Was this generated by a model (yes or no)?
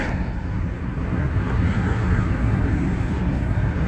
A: yes